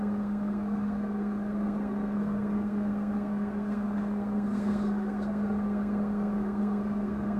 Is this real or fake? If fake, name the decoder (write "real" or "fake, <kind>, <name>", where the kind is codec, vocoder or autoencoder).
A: fake, codec, SNAC